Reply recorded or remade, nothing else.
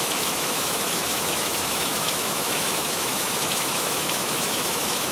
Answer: remade